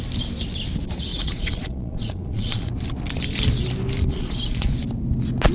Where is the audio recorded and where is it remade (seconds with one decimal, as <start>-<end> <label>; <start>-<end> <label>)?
0.0-1.1 recorded; 1.1-2.7 remade; 2.7-4.0 recorded; 4.0-4.7 remade; 4.7-5.5 recorded